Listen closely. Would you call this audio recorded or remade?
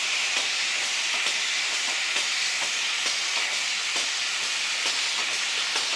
recorded